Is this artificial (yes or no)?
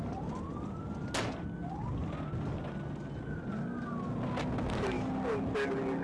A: no